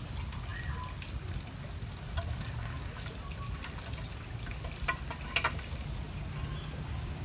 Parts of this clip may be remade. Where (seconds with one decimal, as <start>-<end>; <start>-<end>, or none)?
none